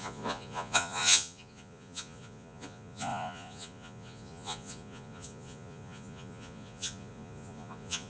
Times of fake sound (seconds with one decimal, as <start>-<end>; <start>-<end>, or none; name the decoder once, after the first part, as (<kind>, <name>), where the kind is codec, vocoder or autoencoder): 0.0-8.1 (vocoder, Vocos)